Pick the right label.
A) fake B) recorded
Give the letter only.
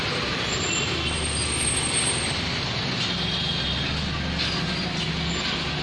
B